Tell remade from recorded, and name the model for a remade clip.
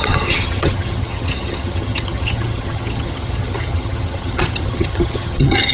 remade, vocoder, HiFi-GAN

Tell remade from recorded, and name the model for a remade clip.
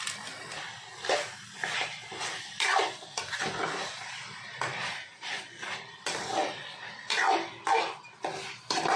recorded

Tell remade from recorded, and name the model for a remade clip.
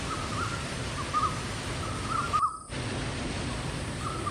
recorded